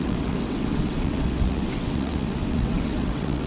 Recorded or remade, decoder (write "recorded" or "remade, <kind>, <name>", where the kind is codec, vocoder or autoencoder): remade, vocoder, WaveNeXt